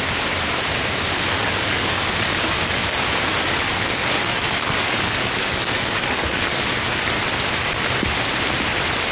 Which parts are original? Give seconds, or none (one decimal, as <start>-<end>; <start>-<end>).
0.0-1.4; 2.6-3.4; 6.6-9.1